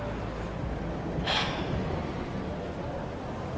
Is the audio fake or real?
real